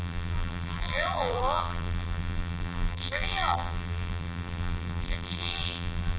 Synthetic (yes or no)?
yes